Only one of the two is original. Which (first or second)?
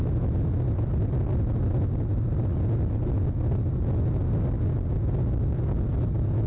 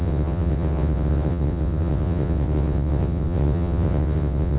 first